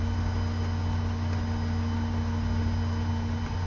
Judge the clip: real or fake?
real